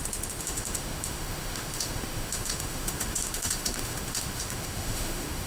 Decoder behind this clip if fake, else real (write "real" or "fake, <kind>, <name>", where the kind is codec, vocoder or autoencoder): fake, autoencoder, DAC-VAE